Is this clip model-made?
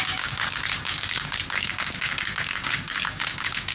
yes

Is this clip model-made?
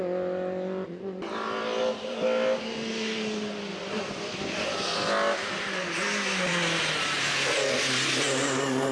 no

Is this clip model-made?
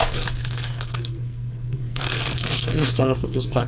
yes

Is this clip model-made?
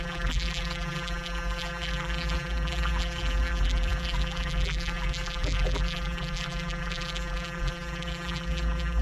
yes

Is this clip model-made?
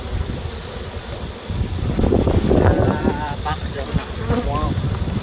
yes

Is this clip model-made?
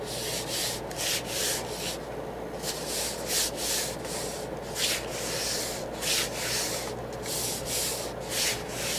no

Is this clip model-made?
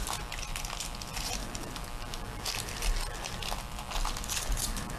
no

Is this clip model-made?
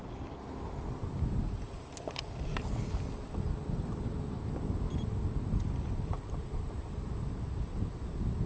no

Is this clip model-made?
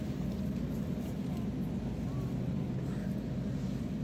no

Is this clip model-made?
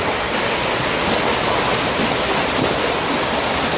no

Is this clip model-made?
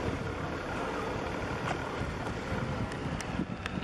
no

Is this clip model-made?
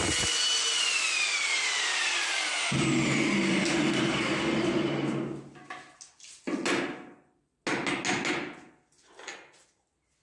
no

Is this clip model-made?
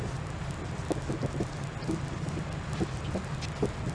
no